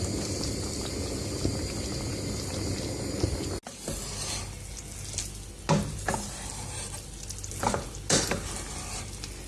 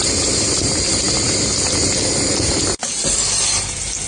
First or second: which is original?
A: first